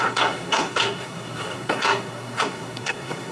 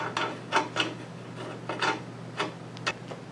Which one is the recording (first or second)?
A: second